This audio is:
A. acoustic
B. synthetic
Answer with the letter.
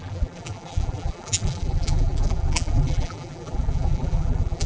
B